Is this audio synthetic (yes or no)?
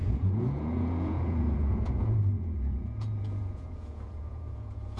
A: yes